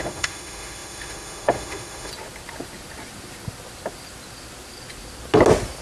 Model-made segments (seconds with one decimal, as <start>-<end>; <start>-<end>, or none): 0.0-2.1